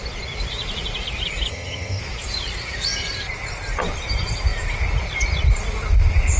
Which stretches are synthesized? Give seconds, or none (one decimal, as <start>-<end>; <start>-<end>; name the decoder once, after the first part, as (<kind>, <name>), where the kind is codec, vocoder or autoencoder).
1.5-2.0 (vocoder, HiFi-GAN)